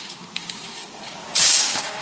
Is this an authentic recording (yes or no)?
no